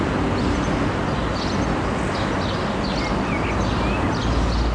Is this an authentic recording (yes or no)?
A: yes